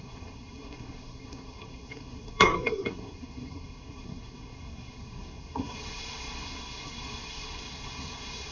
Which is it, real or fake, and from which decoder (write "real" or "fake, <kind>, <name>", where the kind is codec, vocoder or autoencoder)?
fake, codec, SNAC